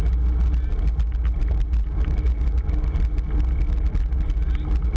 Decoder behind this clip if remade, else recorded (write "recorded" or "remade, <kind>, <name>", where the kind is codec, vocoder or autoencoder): recorded